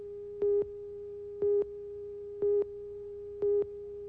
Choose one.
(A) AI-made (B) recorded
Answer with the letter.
B